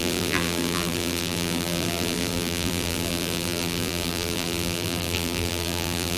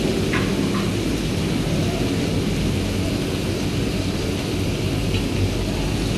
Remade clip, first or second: first